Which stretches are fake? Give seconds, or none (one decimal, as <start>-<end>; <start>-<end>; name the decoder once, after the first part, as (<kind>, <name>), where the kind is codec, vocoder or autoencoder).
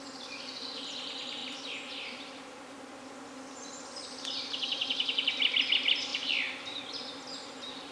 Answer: 1.4-3.1 (vocoder, BigVGAN v2); 4.8-5.5; 6.1-6.8